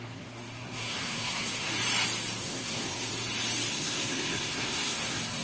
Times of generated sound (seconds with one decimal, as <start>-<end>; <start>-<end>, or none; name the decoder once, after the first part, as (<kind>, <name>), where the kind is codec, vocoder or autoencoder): 0.0-1.7 (codec, SNAC); 2.4-3.1; 3.7-5.4